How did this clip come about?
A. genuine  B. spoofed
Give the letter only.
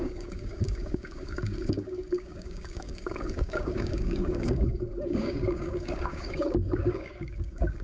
B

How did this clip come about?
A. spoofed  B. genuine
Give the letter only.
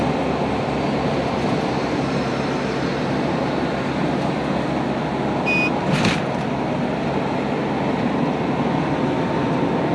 B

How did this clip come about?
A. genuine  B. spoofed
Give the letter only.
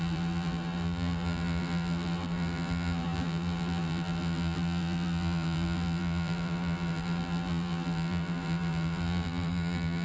B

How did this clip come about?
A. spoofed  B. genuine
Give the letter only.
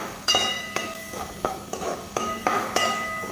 A